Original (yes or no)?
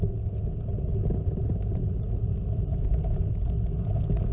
yes